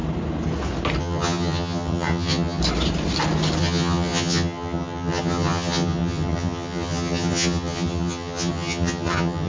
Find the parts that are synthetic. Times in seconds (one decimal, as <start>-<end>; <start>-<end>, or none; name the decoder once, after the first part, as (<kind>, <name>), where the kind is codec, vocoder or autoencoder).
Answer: 1.0-2.6 (vocoder, HiFi-GAN); 3.6-9.5